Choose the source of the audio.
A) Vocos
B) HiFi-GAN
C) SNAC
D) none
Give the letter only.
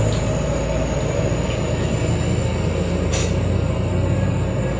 D